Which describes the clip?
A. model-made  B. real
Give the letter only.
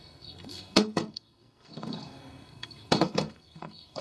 A